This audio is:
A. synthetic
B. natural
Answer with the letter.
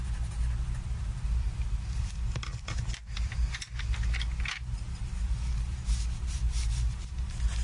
B